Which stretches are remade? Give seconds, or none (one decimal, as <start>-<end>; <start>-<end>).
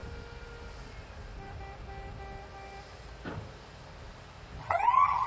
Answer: 4.6-5.3